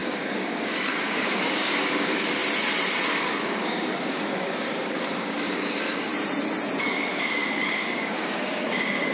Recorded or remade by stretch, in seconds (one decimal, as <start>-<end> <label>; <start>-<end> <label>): 0.0-2.4 remade; 2.4-3.1 recorded; 3.1-6.1 remade; 6.1-6.8 recorded; 6.8-9.1 remade